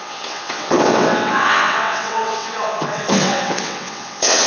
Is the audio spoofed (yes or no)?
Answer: yes